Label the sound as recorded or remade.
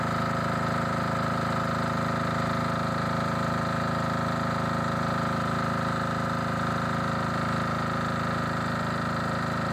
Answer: recorded